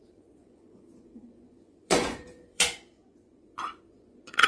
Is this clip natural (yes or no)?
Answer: no